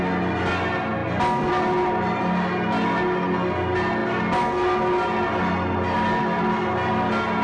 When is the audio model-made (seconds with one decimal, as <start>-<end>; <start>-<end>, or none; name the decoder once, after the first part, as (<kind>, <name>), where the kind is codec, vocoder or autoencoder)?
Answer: none